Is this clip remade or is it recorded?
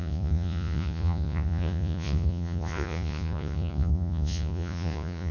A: remade